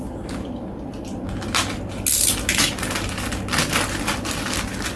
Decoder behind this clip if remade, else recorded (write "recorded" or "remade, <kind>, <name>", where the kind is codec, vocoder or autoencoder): recorded